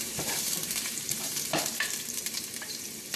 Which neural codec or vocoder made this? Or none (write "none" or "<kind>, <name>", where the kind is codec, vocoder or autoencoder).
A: vocoder, BigVGAN v2